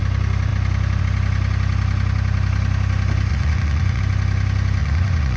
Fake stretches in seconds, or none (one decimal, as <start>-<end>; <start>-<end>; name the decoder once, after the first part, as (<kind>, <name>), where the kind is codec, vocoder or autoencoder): 3.3-4.0 (vocoder, Vocos); 4.8-5.4